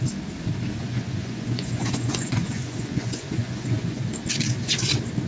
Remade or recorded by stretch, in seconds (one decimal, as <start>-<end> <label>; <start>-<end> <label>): 0.0-0.8 recorded; 0.8-4.0 remade; 4.0-5.3 recorded